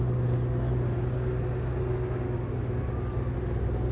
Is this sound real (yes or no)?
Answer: yes